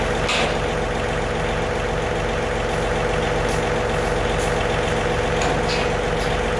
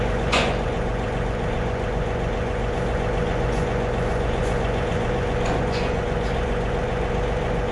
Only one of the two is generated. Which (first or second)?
second